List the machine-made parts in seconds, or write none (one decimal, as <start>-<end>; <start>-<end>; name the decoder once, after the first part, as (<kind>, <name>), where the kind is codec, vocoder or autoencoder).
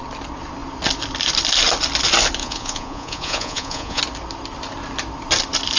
2.4-4.0 (vocoder, Vocos)